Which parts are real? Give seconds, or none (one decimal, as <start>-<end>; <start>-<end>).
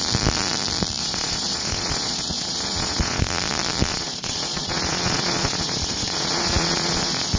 0.0-1.0; 3.2-3.9